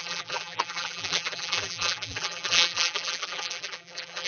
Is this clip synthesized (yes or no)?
yes